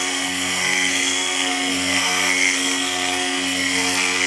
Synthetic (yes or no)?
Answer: yes